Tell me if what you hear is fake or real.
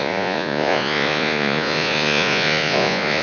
fake